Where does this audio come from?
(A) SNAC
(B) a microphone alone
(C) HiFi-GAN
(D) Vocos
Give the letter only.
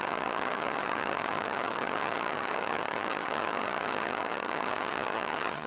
C